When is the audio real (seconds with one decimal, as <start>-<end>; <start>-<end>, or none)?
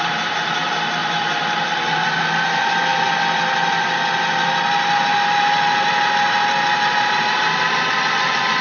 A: 0.0-8.6